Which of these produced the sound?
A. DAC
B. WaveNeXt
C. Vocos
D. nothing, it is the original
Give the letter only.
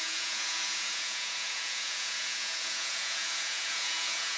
C